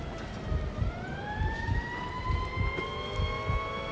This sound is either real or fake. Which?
real